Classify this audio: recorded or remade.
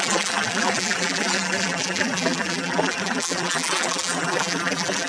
remade